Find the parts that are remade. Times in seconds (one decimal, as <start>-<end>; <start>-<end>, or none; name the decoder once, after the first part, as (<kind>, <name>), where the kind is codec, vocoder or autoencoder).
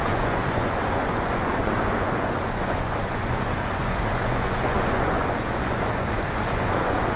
0.0-7.2 (vocoder, Vocos)